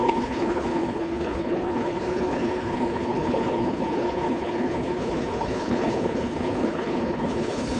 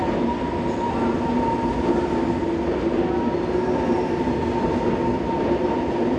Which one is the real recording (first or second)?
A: second